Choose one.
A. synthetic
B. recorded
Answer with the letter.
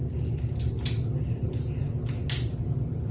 B